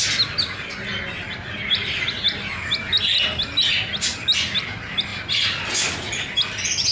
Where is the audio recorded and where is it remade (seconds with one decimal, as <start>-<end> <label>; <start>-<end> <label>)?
0.0-6.9 recorded